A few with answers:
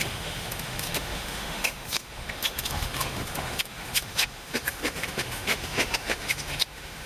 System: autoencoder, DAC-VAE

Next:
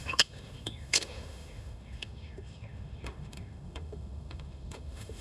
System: autoencoder, DAC-VAE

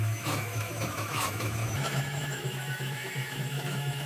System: autoencoder, DAC-VAE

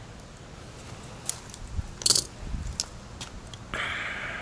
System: none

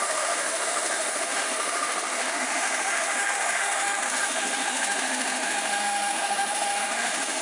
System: autoencoder, DAC-VAE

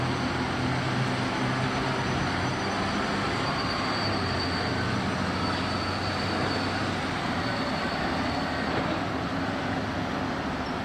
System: none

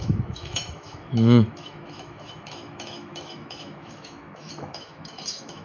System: autoencoder, DAC-VAE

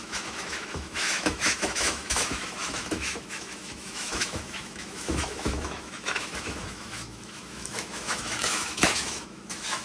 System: autoencoder, DAC-VAE